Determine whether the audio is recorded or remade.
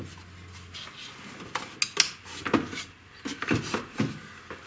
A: recorded